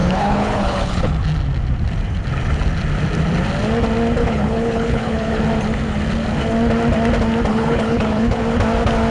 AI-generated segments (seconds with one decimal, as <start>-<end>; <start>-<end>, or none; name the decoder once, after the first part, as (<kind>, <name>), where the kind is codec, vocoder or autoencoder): 0.0-1.1 (codec, HILCodec); 4.2-5.4; 7.5-8.4

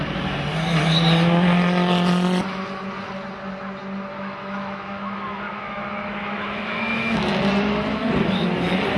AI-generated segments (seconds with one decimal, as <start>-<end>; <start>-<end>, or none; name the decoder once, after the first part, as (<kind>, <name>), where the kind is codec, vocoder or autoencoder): 4.1-7.4 (autoencoder, DAC-VAE)